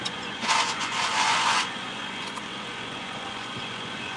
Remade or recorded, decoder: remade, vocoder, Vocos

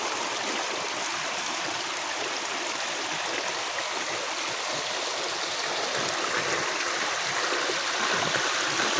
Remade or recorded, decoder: recorded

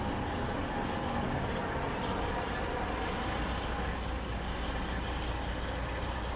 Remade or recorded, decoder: recorded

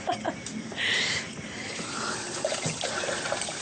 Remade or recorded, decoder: recorded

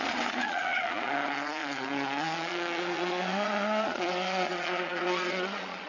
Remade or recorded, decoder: remade, vocoder, Vocos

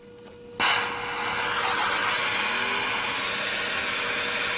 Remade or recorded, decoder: recorded